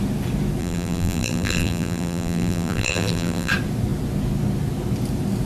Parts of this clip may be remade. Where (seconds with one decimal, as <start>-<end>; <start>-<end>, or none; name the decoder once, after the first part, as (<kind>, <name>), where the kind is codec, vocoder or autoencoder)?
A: 0.6-3.5 (vocoder, BigVGAN v2)